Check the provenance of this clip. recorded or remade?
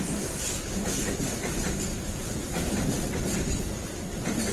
recorded